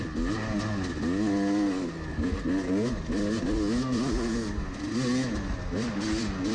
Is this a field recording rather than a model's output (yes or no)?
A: yes